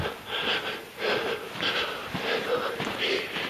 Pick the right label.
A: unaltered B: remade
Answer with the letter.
A